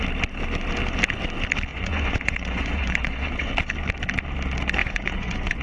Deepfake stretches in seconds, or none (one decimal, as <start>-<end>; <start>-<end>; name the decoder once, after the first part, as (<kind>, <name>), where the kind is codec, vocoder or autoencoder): 1.7-3.5 (vocoder, Vocos); 4.8-5.6